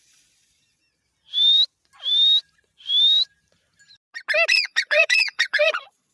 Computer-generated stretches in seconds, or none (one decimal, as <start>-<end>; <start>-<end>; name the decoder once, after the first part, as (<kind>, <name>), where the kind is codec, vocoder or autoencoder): 0.0-0.8 (vocoder, Vocos); 4.5-6.1